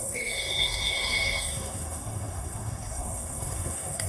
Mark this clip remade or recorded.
remade